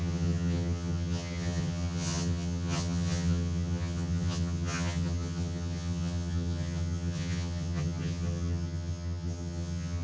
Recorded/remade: remade